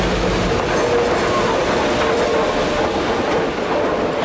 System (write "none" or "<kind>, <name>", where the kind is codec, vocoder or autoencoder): none